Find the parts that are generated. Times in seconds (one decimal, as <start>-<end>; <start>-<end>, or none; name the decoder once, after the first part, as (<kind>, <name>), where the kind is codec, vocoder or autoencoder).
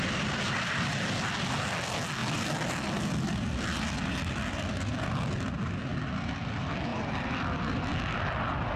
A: 2.2-5.3 (vocoder, BigVGAN v2); 6.9-7.4